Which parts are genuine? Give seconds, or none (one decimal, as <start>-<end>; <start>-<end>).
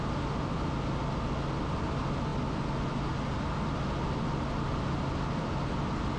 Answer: 0.0-6.2